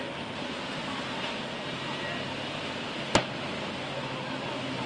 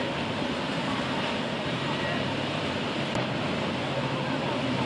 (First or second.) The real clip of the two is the first